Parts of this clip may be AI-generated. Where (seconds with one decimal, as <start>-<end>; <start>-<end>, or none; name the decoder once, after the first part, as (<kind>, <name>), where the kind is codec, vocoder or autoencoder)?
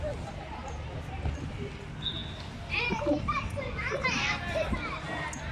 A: none